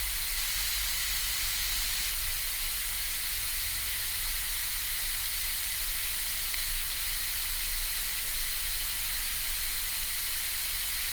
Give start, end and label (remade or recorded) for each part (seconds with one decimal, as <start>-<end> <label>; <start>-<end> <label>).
0.0-6.5 recorded; 6.5-7.0 remade; 7.0-11.1 recorded